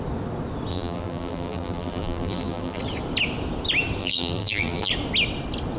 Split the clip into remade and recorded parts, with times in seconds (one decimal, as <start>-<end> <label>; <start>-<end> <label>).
0.0-0.7 recorded; 0.7-2.8 remade; 2.8-4.0 recorded; 4.0-4.9 remade; 4.9-5.8 recorded